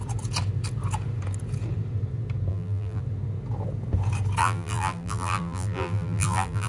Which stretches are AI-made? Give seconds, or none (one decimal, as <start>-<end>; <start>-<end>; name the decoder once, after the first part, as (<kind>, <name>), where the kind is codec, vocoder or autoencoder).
2.5-3.0 (vocoder, BigVGAN v2); 4.4-6.7